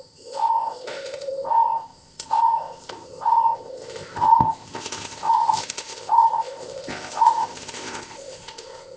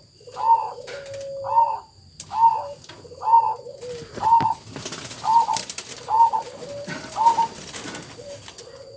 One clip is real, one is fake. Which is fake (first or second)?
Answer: first